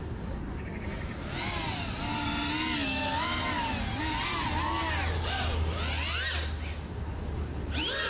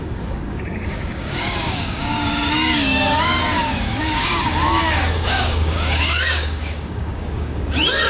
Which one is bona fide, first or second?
first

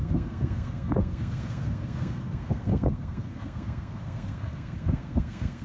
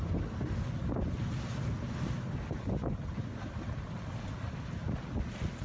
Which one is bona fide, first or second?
second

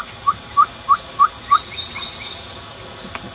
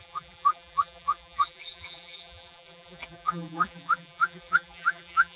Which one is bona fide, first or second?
first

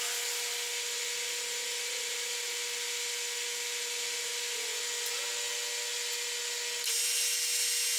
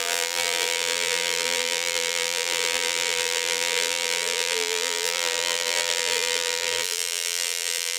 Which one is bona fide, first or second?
first